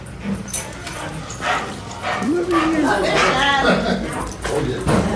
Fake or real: real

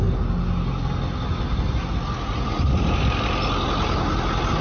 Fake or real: real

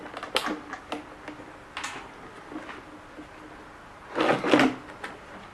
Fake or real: real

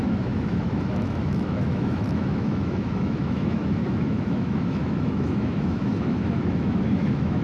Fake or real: fake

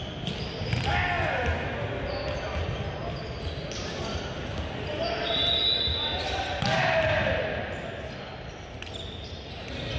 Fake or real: real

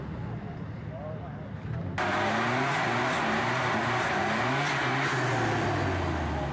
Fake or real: real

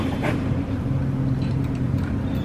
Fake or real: fake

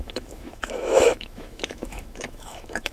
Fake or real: fake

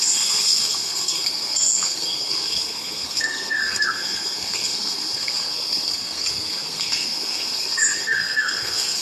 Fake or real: fake